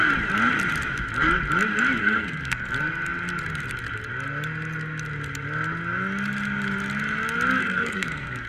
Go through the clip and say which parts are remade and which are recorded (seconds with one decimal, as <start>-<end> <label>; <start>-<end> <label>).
0.0-2.0 recorded; 2.0-2.7 remade; 2.7-7.6 recorded; 7.6-8.5 remade